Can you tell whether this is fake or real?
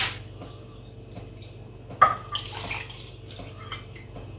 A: real